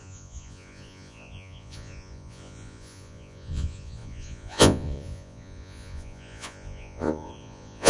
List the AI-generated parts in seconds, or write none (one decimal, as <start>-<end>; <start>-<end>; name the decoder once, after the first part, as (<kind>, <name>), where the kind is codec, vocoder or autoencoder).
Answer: 0.0-7.9 (vocoder, Vocos)